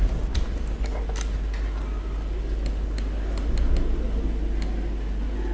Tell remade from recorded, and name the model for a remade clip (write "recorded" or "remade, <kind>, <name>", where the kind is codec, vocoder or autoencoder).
recorded